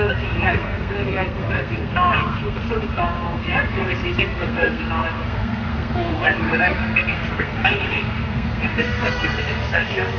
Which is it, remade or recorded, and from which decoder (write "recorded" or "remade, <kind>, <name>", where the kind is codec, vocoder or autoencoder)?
remade, codec, SNAC